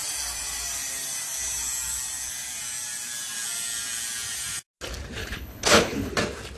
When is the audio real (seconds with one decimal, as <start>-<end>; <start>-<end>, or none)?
0.0-5.2; 6.1-6.6